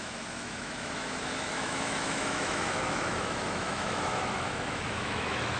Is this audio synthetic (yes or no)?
yes